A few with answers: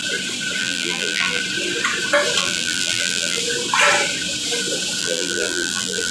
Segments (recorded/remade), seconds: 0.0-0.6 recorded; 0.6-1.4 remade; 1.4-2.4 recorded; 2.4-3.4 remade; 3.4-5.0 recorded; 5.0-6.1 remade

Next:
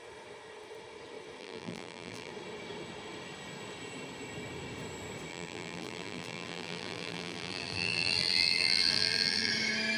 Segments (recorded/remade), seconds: 0.0-1.4 recorded; 1.4-2.3 remade; 2.3-5.3 recorded; 5.3-9.5 remade; 9.5-10.0 recorded

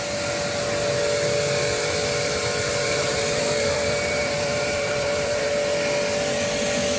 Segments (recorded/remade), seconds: 0.0-2.8 recorded; 2.8-5.5 remade; 5.5-7.0 recorded